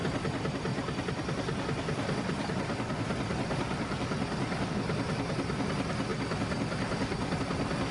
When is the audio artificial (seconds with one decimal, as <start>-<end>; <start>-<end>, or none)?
0.7-4.7; 6.1-7.4